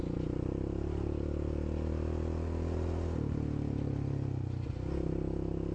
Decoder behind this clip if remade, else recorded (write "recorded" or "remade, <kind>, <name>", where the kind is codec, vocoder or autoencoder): recorded